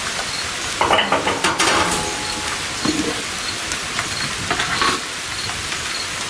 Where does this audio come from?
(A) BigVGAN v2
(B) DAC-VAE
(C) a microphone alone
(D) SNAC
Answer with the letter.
A